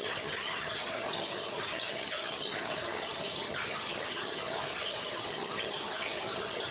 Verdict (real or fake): fake